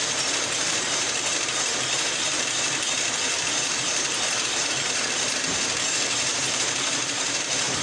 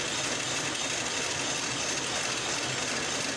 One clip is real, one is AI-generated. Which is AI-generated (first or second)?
first